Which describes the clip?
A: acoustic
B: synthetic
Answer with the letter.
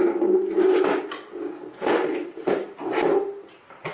A